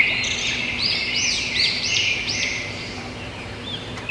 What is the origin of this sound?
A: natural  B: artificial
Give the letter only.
B